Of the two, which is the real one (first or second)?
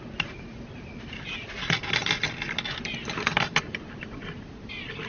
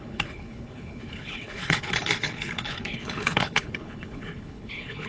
first